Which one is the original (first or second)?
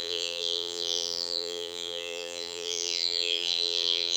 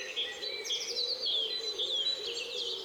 second